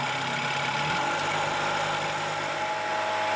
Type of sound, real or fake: real